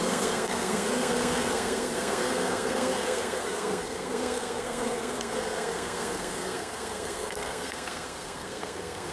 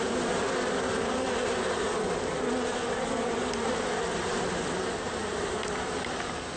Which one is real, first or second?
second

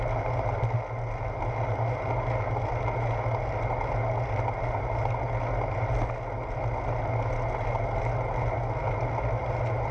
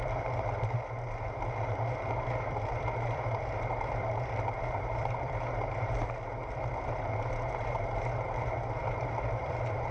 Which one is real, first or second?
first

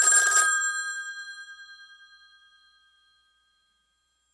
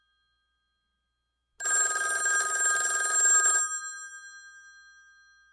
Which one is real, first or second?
second